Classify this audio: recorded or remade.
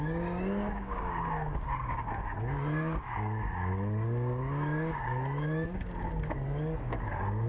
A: remade